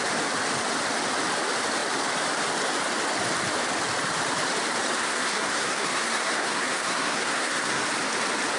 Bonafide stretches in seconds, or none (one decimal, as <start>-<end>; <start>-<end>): 0.0-5.0; 7.8-8.6